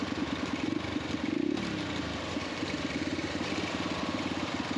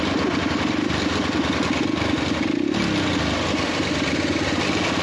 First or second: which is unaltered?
second